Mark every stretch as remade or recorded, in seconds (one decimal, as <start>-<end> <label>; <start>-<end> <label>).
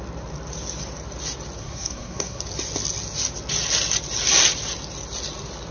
0.0-1.6 recorded; 1.6-2.4 remade; 2.4-5.7 recorded